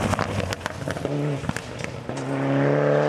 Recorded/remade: recorded